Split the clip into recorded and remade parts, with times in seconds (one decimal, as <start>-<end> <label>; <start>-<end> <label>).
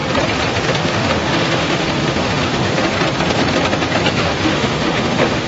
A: 0.0-0.5 recorded; 0.5-2.9 remade; 2.9-4.1 recorded; 4.1-5.5 remade